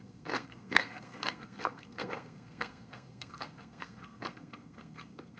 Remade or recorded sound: remade